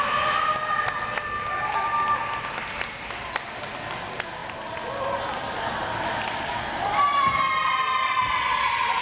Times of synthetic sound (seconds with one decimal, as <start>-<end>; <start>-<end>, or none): none